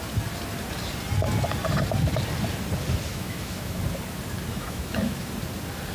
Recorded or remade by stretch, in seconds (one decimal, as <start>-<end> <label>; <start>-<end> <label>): 0.0-3.1 recorded; 3.1-3.8 remade; 3.8-4.5 recorded; 4.5-5.3 remade; 5.3-5.9 recorded